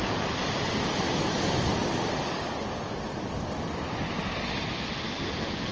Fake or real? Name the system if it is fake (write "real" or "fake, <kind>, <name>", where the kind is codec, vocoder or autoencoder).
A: real